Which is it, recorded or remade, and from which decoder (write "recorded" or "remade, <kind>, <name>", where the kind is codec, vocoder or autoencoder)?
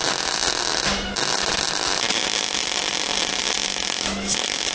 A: recorded